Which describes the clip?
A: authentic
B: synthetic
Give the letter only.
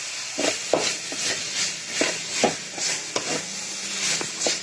A